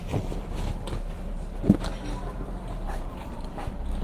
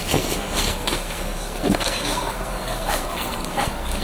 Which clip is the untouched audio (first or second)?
first